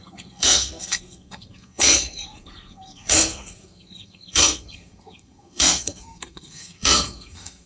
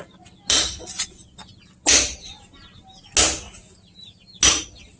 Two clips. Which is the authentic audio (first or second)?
second